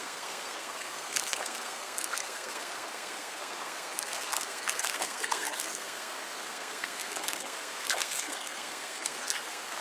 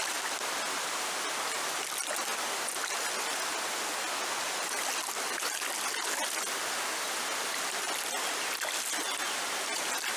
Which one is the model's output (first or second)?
first